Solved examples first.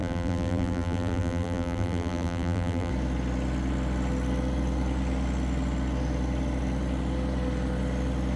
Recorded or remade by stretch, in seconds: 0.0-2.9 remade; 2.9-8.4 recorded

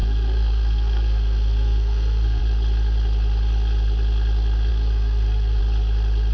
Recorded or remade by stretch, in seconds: 0.0-2.4 remade; 2.4-4.7 recorded; 4.7-5.6 remade; 5.6-6.3 recorded

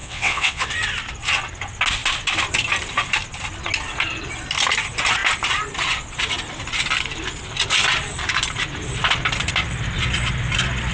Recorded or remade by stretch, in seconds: 0.0-0.7 remade; 0.7-10.9 recorded

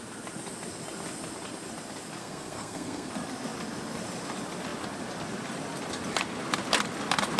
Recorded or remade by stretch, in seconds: 0.0-2.2 recorded; 2.2-3.1 remade; 3.1-7.4 recorded

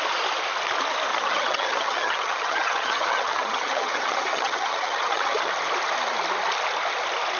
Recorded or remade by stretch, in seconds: 0.0-1.1 recorded; 1.1-5.5 remade; 5.5-7.4 recorded